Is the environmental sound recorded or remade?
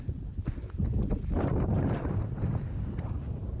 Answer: recorded